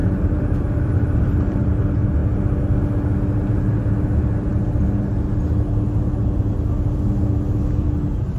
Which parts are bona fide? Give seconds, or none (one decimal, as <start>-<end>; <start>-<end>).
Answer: 1.7-8.4